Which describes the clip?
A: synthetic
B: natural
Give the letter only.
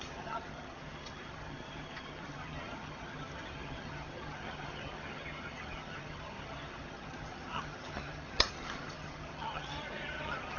A